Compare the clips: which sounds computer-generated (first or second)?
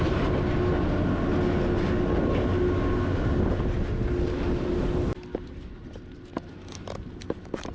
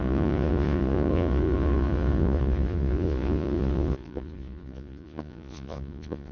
second